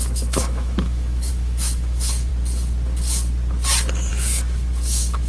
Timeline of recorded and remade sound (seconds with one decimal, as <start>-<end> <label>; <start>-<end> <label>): 0.0-2.3 remade; 2.3-4.1 recorded; 4.1-5.3 remade

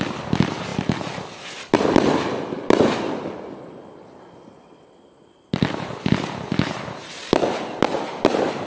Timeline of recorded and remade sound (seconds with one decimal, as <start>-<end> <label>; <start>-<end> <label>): 0.0-8.7 recorded

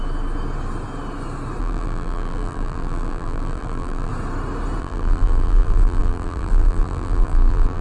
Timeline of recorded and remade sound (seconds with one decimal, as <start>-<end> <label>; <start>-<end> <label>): 0.0-1.6 recorded; 1.6-4.1 remade; 4.1-4.8 recorded; 4.8-7.8 remade

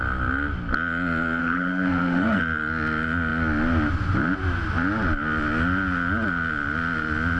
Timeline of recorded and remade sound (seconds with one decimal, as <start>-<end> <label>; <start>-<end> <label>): 0.0-1.4 recorded; 1.4-2.4 remade; 2.4-7.4 recorded

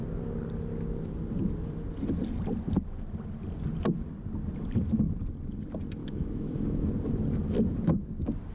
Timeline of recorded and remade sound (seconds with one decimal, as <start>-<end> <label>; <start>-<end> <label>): 0.0-6.0 recorded; 6.0-6.9 remade; 6.9-8.5 recorded

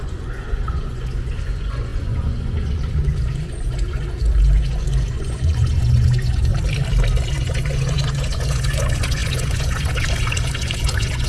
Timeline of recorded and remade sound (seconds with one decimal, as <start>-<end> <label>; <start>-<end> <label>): 0.0-6.5 remade; 6.5-7.3 recorded; 7.3-11.3 remade

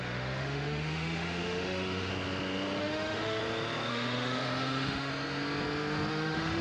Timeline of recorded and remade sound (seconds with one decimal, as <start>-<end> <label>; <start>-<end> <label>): 0.0-2.1 remade; 2.1-2.8 recorded; 2.8-3.4 remade; 3.4-3.9 recorded; 3.9-5.1 remade; 5.1-6.1 recorded; 6.1-6.6 remade

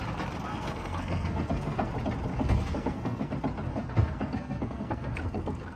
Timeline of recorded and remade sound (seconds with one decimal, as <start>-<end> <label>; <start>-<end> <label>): 0.0-0.5 recorded; 0.5-1.9 remade; 1.9-2.3 recorded; 2.3-3.3 remade; 3.3-3.7 recorded; 3.7-5.8 remade